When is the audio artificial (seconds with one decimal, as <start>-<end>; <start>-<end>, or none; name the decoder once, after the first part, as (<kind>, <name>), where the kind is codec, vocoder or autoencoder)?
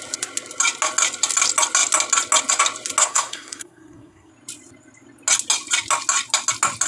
3.0-4.3 (codec, SNAC)